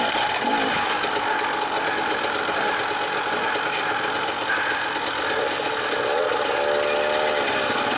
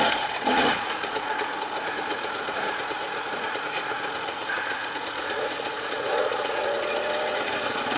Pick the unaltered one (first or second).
first